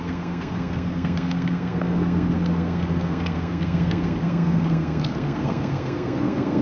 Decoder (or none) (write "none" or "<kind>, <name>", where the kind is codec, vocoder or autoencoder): codec, SNAC